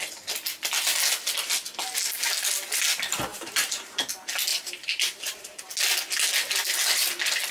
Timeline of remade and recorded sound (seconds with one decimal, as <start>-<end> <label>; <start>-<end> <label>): 0.0-3.3 recorded; 3.3-4.1 remade; 4.1-4.5 recorded; 4.5-5.6 remade; 5.6-7.5 recorded